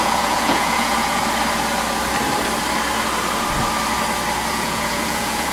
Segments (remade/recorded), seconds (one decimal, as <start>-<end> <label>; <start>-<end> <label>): 0.0-1.2 remade; 1.2-4.5 recorded; 4.5-5.5 remade